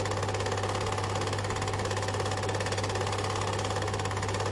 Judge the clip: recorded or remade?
recorded